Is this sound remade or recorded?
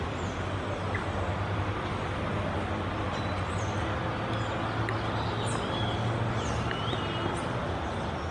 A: recorded